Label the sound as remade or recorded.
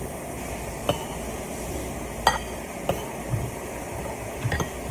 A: recorded